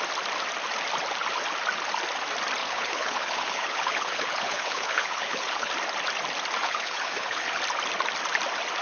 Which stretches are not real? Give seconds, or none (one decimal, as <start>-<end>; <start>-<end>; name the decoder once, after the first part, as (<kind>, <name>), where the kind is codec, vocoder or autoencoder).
2.6-5.7 (codec, HILCodec); 6.6-7.6